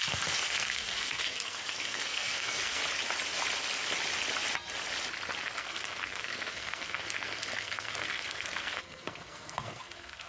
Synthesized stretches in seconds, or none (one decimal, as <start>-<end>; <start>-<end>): 0.0-2.8; 5.4-10.3